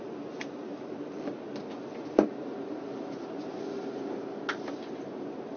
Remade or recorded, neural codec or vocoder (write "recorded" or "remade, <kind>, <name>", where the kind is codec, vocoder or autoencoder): recorded